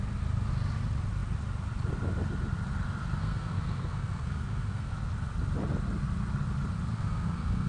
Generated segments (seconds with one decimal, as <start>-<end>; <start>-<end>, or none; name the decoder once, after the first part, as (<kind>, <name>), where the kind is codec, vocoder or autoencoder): 3.2-4.9 (codec, SNAC); 6.9-7.7